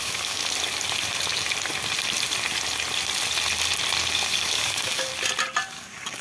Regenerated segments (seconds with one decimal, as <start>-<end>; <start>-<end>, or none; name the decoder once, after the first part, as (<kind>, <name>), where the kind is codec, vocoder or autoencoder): 0.0-0.4 (codec, DAC); 4.1-5.1; 5.7-6.2